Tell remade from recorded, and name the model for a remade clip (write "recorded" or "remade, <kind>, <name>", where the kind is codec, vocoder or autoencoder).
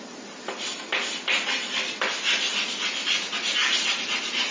recorded